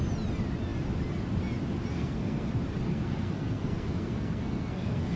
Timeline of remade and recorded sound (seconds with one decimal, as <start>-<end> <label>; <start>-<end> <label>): 0.0-1.9 recorded; 1.9-2.5 remade; 2.5-2.9 recorded; 2.9-5.2 remade

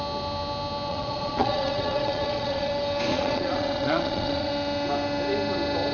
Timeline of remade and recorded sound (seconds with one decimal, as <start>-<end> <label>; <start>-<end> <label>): 0.0-0.9 recorded; 0.9-2.7 remade; 2.7-3.1 recorded; 3.1-4.5 remade; 4.5-5.9 recorded

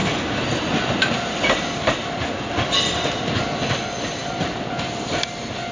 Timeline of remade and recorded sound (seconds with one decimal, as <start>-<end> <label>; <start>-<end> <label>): 0.0-5.7 recorded